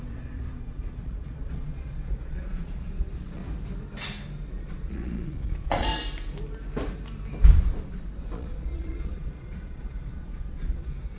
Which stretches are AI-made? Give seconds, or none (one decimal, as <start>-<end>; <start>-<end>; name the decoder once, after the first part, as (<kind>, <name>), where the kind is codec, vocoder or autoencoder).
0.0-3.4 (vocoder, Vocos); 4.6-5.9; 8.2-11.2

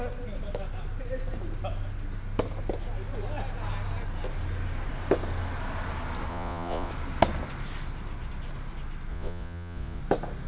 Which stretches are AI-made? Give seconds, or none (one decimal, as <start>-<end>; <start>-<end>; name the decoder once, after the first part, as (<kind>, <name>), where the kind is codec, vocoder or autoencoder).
6.3-6.9 (vocoder, Vocos); 9.1-10.0

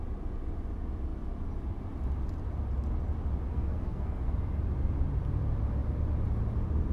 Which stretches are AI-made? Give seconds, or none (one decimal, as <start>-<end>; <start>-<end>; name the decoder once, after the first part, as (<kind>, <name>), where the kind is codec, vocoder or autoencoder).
3.5-4.3 (codec, SNAC)

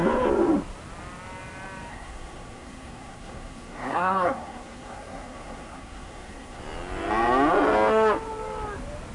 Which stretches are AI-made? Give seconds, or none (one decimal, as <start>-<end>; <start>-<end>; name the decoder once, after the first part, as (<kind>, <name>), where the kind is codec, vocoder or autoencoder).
1.9-6.6 (codec, SNAC)

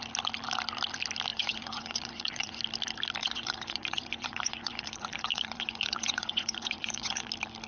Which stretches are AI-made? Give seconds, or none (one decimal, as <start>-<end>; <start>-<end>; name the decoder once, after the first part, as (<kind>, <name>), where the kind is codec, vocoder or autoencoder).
1.3-2.6 (vocoder, Vocos); 3.2-7.3

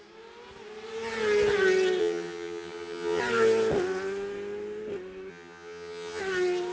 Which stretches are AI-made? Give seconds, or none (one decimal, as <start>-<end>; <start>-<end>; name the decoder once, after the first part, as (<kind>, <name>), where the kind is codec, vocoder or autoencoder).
2.0-3.2 (vocoder, HiFi-GAN); 5.3-6.2